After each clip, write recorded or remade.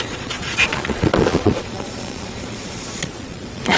remade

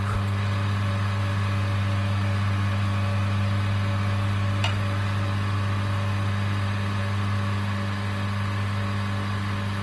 recorded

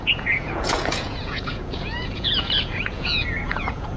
remade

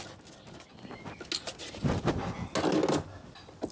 recorded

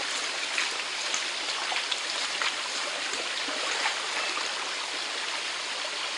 recorded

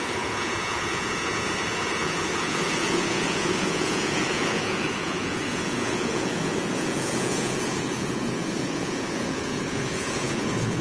remade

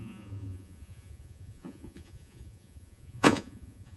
remade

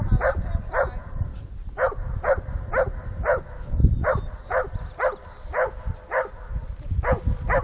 recorded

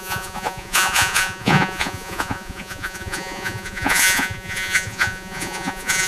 remade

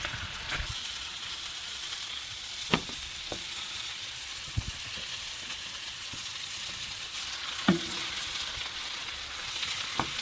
remade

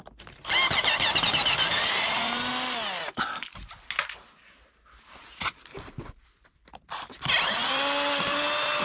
recorded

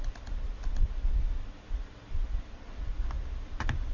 recorded